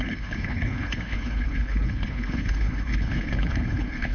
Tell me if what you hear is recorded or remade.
remade